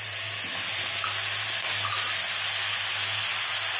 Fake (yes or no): no